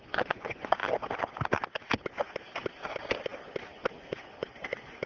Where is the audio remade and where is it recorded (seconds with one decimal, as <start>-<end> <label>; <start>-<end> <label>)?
0.0-0.8 remade; 0.8-3.9 recorded; 3.9-5.1 remade